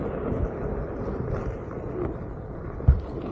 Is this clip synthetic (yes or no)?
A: yes